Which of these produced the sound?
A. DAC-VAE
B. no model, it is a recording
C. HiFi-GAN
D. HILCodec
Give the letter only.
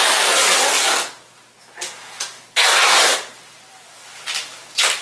B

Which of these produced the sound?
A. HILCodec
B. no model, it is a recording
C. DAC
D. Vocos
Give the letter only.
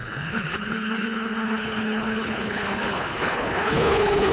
A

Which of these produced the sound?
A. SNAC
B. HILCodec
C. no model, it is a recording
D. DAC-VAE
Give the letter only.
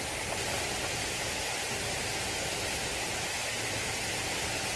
C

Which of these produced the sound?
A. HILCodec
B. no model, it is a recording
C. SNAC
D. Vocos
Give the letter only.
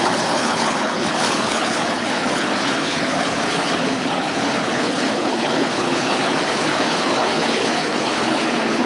A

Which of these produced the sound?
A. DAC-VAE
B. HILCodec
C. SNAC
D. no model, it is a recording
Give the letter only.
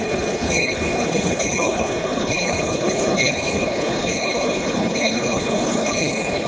B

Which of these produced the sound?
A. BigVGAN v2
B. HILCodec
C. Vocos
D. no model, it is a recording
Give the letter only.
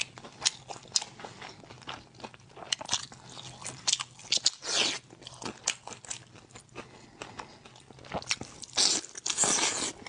D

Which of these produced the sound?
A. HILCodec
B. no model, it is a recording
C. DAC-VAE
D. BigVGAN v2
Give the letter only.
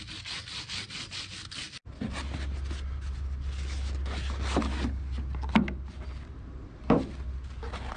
B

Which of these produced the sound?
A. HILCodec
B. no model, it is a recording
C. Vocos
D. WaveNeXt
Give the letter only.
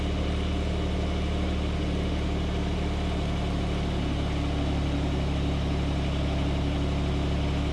B